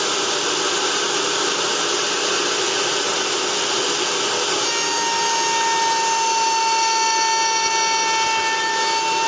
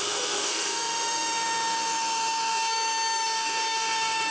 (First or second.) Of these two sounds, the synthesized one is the second